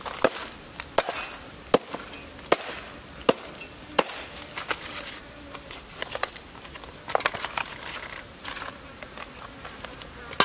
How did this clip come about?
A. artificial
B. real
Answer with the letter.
B